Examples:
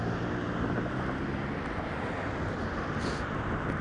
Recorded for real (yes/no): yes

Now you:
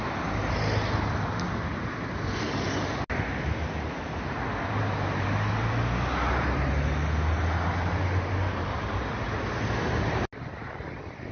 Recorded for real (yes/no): yes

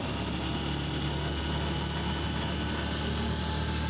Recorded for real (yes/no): yes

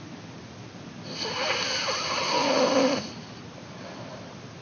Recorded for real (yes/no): yes